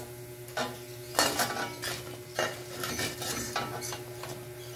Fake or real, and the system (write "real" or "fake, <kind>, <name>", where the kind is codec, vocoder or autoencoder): real